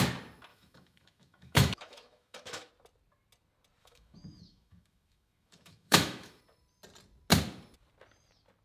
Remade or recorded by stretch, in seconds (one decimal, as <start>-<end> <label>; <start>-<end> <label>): 0.0-0.5 recorded; 0.5-2.7 remade; 2.7-3.8 recorded; 3.8-6.4 remade; 6.4-8.6 recorded